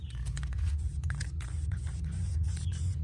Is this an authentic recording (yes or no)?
no